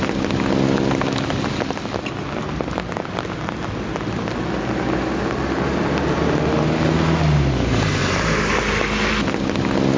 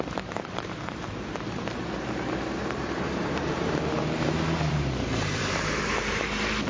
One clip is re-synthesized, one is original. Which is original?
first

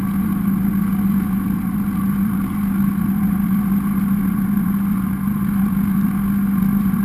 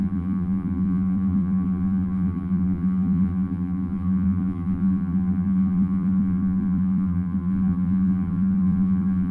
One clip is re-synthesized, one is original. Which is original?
first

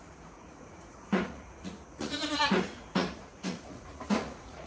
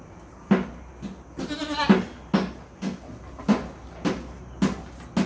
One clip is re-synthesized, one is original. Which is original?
second